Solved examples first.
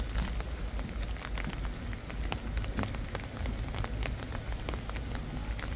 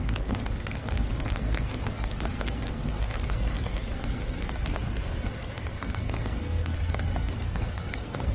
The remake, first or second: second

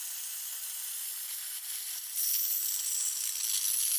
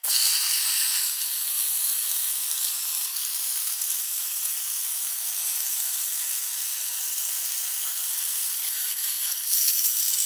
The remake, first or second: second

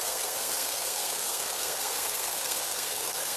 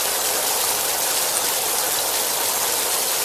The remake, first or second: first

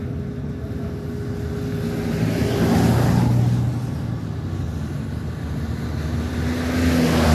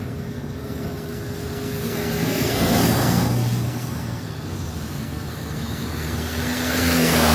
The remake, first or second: second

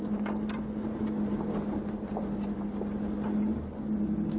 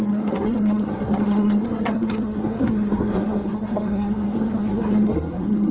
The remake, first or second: second